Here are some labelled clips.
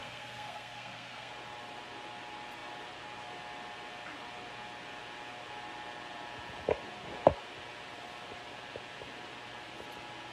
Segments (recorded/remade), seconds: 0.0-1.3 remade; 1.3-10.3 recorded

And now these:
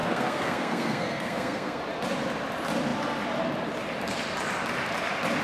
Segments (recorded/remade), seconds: 0.0-1.8 remade; 1.8-5.4 recorded